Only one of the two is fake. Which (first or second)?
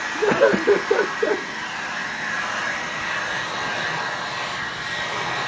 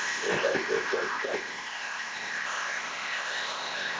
second